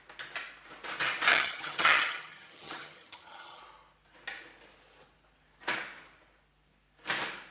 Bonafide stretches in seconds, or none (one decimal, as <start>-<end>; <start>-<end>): 0.0-1.3; 3.6-7.5

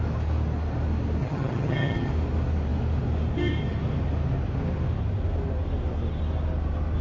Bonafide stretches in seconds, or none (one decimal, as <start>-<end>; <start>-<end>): 0.0-1.2; 2.1-7.0

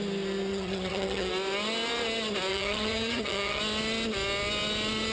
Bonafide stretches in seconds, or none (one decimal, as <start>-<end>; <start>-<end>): 0.0-0.5; 1.3-2.5; 3.6-5.1

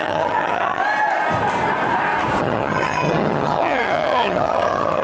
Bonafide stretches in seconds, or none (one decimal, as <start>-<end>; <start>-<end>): 0.8-2.4

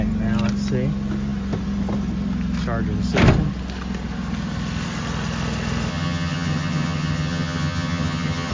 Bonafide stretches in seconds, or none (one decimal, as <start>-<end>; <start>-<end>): 0.0-5.9